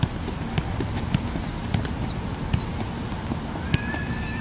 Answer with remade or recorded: recorded